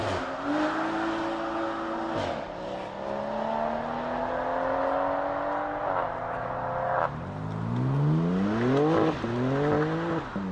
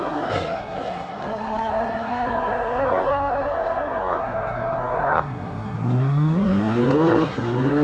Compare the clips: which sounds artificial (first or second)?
second